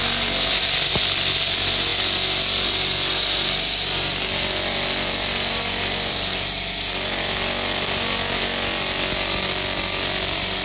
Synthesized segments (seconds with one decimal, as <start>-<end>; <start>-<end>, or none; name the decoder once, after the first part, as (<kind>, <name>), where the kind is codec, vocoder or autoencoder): none